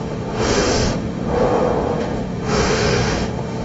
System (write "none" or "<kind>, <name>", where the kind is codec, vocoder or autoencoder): autoencoder, DAC-VAE